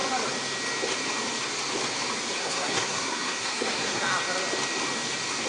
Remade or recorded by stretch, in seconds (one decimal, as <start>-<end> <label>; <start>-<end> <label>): 0.0-2.4 recorded; 2.4-4.0 remade; 4.0-5.5 recorded